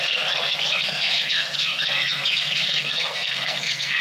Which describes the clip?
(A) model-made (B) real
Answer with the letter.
A